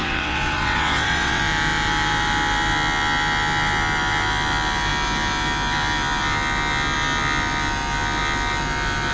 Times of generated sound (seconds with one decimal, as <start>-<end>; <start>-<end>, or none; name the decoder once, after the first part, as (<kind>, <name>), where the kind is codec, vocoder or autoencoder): 0.0-1.4 (vocoder, WaveNeXt)